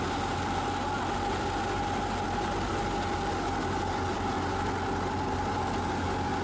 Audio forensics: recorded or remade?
recorded